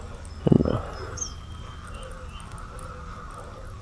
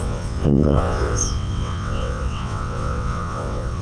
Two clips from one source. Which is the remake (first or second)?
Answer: second